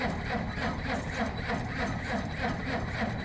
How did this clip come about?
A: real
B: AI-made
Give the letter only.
A